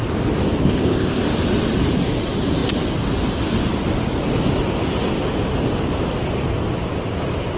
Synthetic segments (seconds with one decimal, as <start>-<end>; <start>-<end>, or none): 0.6-1.2